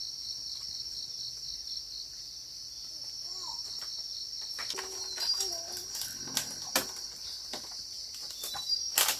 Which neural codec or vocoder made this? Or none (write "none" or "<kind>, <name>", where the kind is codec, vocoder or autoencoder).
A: none